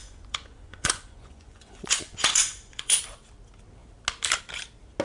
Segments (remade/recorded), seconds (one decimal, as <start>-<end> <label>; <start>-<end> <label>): 0.0-3.0 remade; 3.0-5.0 recorded